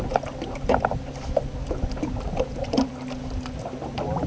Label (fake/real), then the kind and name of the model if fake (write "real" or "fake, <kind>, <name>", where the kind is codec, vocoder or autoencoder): real